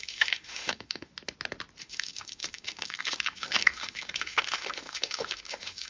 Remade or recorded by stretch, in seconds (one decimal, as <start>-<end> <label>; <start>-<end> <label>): 0.0-1.1 remade; 1.1-1.8 recorded; 1.8-5.9 remade